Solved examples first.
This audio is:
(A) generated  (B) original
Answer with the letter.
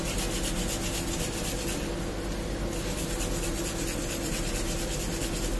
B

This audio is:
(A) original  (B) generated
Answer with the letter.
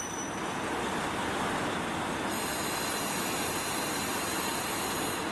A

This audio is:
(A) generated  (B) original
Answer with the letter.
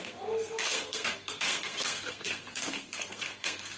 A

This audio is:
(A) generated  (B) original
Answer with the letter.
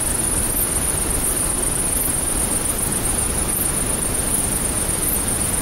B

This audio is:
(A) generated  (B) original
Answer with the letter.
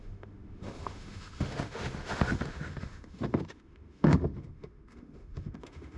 A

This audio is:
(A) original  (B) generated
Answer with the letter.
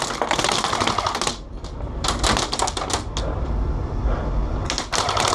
A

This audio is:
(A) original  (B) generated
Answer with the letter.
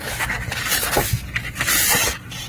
A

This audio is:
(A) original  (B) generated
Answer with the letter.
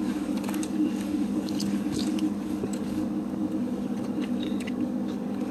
B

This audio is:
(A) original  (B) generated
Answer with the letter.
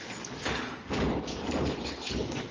B